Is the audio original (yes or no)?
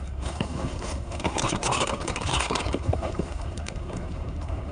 no